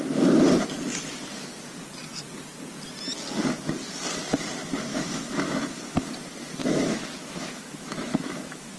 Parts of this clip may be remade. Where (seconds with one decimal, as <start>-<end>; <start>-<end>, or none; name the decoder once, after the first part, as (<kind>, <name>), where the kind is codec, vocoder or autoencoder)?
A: 4.9-5.6 (autoencoder, DAC-VAE); 6.6-8.8